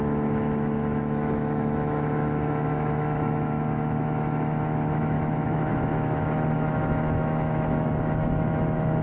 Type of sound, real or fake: fake